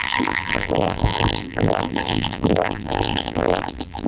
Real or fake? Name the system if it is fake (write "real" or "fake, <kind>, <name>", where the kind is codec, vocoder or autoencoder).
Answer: fake, vocoder, BigVGAN v2